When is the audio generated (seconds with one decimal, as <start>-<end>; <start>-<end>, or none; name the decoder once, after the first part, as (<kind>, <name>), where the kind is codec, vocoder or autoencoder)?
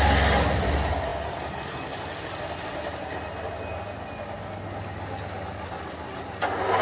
none